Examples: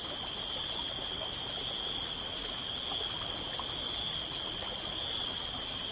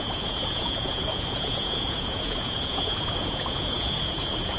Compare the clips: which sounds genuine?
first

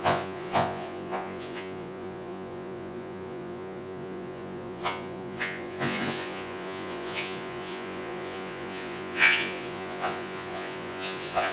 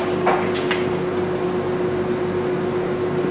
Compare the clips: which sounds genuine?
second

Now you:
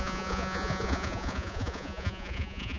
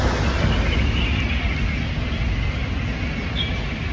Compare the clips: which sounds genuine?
second